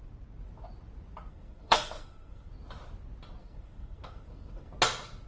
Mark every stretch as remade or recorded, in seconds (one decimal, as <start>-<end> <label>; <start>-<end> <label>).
0.0-1.3 recorded; 1.3-2.5 remade; 2.5-3.4 recorded; 3.4-4.7 remade; 4.7-5.3 recorded